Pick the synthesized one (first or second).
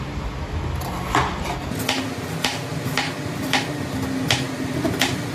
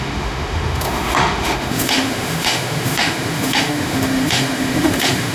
second